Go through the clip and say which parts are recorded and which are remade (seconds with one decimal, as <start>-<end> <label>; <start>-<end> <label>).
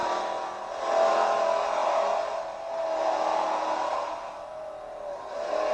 0.0-5.7 recorded